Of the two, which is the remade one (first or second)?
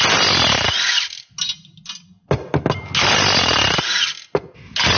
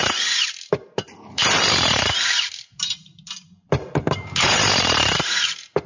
second